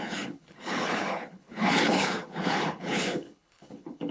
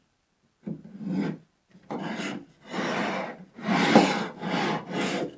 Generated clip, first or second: first